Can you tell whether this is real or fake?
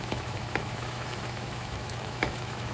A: fake